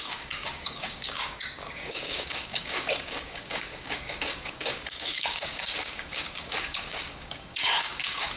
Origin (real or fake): fake